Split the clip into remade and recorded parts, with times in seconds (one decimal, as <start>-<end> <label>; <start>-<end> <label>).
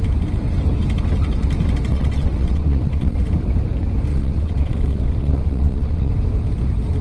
0.0-1.9 recorded; 1.9-3.2 remade; 3.2-4.1 recorded; 4.1-6.1 remade; 6.1-7.0 recorded